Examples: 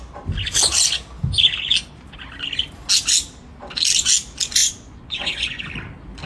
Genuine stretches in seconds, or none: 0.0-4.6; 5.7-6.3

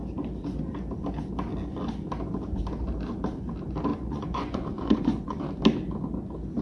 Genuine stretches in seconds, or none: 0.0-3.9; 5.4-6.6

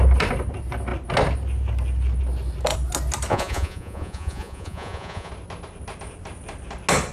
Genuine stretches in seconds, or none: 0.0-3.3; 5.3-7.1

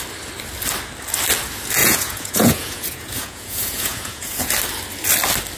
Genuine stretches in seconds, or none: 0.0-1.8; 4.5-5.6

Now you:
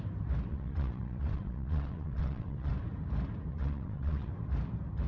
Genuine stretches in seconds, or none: 0.0-0.5; 2.7-3.5; 4.3-5.1

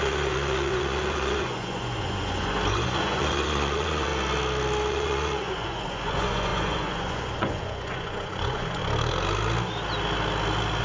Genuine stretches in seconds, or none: 4.1-4.9; 8.8-10.8

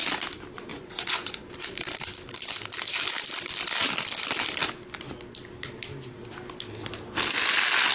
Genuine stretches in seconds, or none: 0.0-0.7; 1.4-7.9

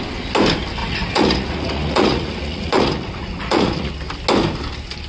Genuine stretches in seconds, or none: 0.0-0.8; 3.9-5.1